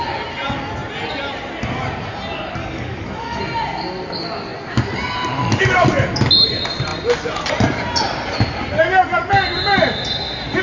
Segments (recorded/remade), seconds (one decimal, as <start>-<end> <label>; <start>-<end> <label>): 0.0-2.6 recorded; 2.6-3.4 remade; 3.4-10.6 recorded